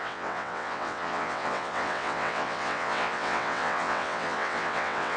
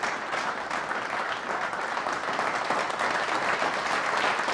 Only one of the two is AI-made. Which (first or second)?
first